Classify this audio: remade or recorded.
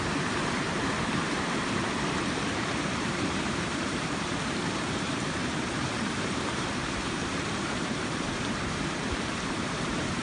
remade